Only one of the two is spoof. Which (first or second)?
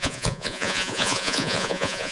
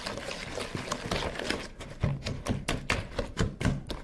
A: first